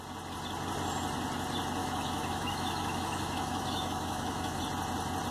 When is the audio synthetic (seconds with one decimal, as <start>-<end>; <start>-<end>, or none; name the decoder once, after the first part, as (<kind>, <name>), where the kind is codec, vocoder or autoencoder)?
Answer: 1.8-4.6 (autoencoder, DAC-VAE)